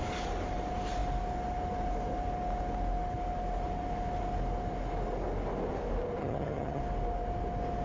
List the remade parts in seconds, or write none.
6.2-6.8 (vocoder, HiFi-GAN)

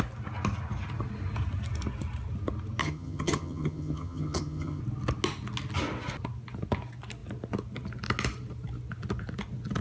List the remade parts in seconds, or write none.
2.8-4.8 (vocoder, HiFi-GAN)